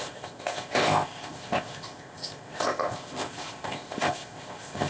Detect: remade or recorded remade